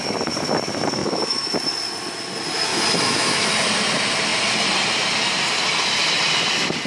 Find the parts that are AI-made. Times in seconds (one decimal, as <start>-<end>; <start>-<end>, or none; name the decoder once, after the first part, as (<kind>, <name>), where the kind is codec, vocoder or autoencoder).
1.0-1.5 (autoencoder, DAC-VAE); 2.7-3.5